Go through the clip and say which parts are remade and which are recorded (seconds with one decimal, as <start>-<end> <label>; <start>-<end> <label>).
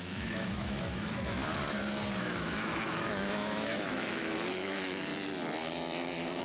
0.0-1.4 remade; 1.4-2.2 recorded; 2.2-5.1 remade; 5.1-6.4 recorded